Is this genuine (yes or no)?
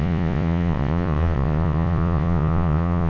no